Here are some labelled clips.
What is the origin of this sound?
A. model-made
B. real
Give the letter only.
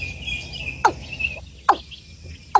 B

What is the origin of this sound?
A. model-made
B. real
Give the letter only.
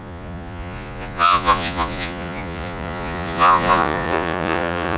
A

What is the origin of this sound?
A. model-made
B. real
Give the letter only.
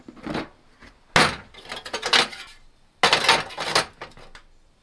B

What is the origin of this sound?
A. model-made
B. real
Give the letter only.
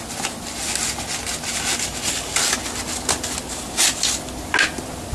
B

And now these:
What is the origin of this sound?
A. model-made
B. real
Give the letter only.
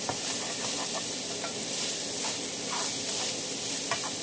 B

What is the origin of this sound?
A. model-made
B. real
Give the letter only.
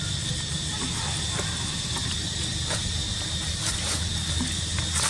B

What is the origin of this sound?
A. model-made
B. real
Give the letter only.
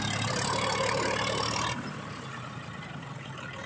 B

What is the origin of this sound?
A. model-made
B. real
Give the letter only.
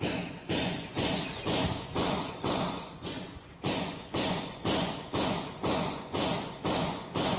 A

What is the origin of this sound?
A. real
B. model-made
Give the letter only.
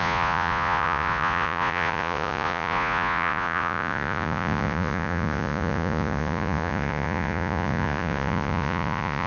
B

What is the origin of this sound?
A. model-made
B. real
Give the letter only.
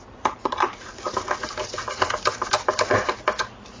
B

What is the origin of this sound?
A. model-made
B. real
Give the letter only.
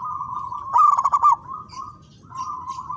B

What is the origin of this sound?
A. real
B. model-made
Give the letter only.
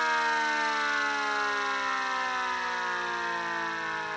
A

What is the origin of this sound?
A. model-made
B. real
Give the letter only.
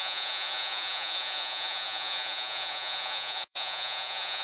A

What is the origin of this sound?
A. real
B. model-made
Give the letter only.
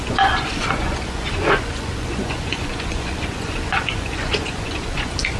B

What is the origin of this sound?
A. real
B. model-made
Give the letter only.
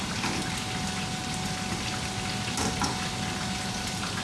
A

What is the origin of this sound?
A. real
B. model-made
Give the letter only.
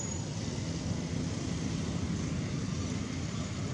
A